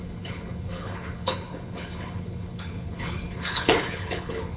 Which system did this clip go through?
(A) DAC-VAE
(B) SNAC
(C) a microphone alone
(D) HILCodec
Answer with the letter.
D